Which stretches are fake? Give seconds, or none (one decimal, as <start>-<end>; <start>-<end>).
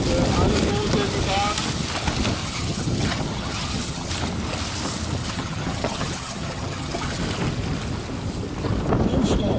2.4-4.1; 5.2-7.2